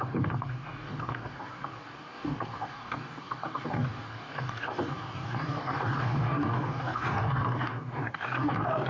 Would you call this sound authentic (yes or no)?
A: no